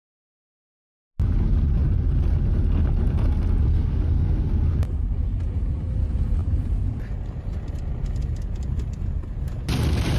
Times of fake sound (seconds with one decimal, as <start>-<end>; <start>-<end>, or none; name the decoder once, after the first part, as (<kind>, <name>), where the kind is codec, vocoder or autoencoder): 3.7-4.4 (codec, SNAC)